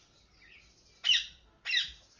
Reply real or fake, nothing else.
real